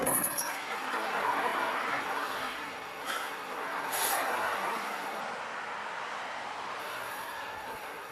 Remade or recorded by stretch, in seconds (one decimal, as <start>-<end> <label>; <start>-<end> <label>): 0.0-5.2 remade; 5.2-6.8 recorded; 6.8-8.1 remade